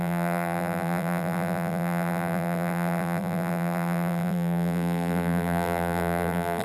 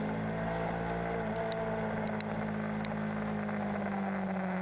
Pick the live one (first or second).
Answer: second